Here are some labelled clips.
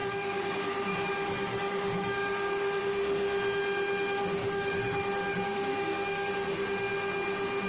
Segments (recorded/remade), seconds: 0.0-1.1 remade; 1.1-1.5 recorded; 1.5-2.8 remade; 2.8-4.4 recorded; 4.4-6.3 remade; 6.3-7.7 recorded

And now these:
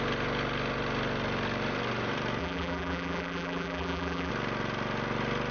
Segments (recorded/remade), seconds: 0.0-2.4 recorded; 2.4-4.3 remade; 4.3-5.5 recorded